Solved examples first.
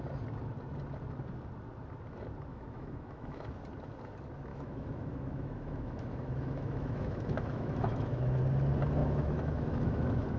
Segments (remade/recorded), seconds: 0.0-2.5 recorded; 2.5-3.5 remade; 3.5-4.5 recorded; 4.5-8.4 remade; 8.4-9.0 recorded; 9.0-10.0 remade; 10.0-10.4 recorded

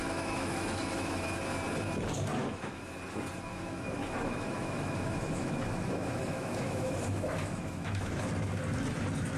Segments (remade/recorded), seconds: 0.0-1.4 remade; 1.4-2.4 recorded; 2.4-2.9 remade; 2.9-3.5 recorded; 3.5-8.3 remade; 8.3-9.4 recorded

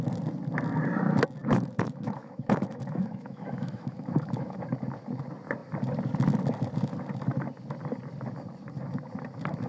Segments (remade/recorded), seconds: 0.0-1.4 recorded; 1.4-4.6 remade; 4.6-9.7 recorded

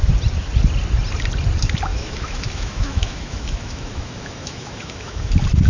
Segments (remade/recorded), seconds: 0.0-1.9 recorded; 1.9-5.3 remade; 5.3-5.7 recorded

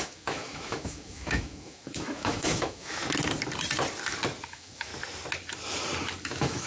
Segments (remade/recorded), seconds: 0.0-3.0 remade; 3.0-4.5 recorded; 4.5-4.9 remade; 4.9-6.2 recorded; 6.2-6.7 remade

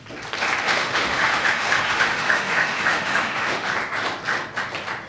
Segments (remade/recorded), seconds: 0.0-0.6 recorded; 0.6-3.7 remade; 3.7-5.1 recorded

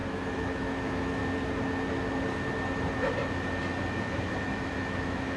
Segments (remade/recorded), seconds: 0.0-1.2 remade; 1.2-4.4 recorded; 4.4-5.4 remade